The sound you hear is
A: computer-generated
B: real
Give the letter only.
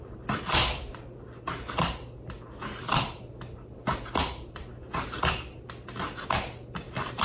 B